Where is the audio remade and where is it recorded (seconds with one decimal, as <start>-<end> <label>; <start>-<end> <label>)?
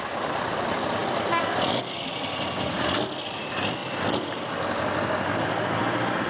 0.0-1.0 recorded; 1.0-2.0 remade; 2.0-3.8 recorded; 3.8-6.3 remade